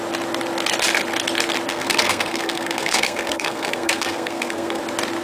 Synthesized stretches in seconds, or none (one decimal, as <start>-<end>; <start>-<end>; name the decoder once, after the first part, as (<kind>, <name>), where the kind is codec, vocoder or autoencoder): 1.7-4.8 (codec, SNAC)

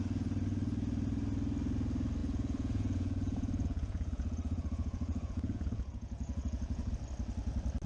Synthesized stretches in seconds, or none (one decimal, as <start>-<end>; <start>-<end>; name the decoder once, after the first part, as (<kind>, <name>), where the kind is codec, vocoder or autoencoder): 2.2-6.9 (vocoder, Vocos)

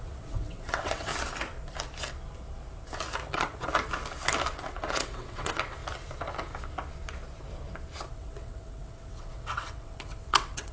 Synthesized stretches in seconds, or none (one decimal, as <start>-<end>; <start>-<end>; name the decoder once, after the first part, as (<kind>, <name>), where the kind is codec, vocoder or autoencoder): 0.0-1.1 (vocoder, WaveNeXt); 3.3-3.7; 4.6-5.8; 8.1-10.7

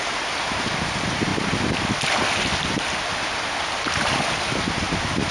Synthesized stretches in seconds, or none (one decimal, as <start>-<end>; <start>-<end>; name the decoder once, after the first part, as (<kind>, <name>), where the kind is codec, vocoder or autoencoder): none